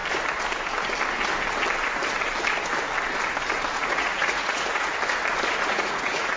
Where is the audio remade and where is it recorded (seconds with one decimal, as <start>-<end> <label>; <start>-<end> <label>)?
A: 0.0-3.8 recorded; 3.8-4.9 remade; 4.9-5.7 recorded; 5.7-6.4 remade